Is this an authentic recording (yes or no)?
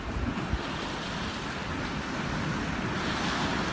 yes